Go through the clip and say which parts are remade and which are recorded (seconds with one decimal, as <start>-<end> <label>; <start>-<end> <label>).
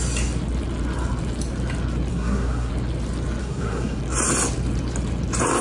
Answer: 0.0-2.1 recorded; 2.1-2.7 remade; 2.7-3.4 recorded; 3.4-4.0 remade; 4.0-5.6 recorded